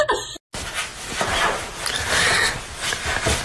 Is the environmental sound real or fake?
real